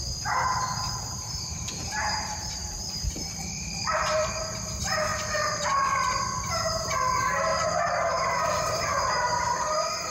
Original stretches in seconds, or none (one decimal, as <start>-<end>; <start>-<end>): 5.1-6.3; 7.5-8.5

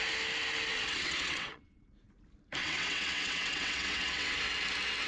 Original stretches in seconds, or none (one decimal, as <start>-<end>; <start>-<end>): 0.0-0.7; 1.8-2.6; 4.3-5.1

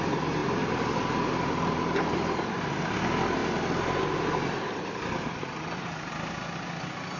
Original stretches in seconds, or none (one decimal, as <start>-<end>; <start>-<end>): 0.0-3.4; 6.1-7.2

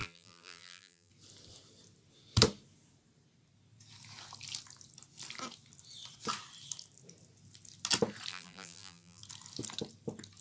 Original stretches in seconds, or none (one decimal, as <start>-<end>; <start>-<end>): 1.1-8.3; 9.2-10.4

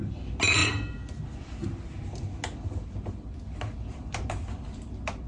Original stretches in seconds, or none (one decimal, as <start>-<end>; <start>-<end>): 0.0-5.3

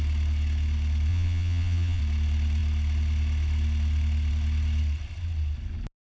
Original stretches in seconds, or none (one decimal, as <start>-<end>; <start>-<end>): 0.0-1.1; 2.0-6.1

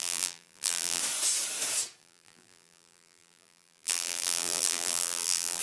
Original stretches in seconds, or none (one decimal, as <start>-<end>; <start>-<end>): 1.0-2.0

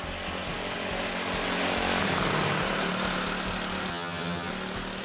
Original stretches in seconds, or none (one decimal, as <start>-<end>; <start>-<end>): 0.0-3.9; 4.5-5.0